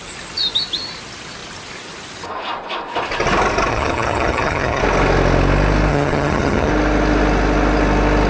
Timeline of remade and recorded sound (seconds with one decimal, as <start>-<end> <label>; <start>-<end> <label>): 0.0-3.7 recorded; 3.7-4.8 remade; 4.8-5.9 recorded; 5.9-6.7 remade; 6.7-8.3 recorded